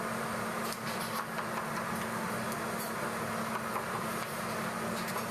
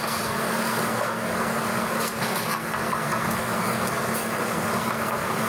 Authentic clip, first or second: first